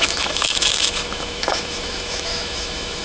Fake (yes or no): yes